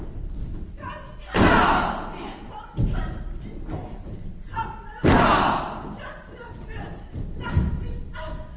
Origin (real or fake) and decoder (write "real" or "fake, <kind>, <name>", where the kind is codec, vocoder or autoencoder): real